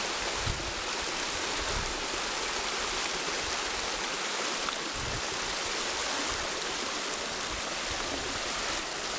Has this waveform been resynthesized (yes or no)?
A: no